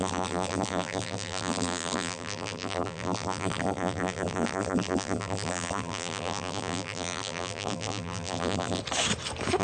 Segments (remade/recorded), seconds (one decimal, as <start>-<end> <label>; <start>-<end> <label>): 0.0-8.8 remade; 8.8-9.6 recorded